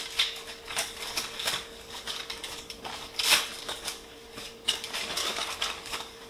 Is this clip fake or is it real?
fake